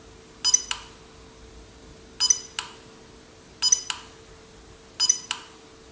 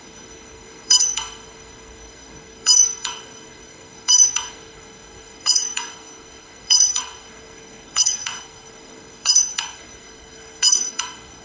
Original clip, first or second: first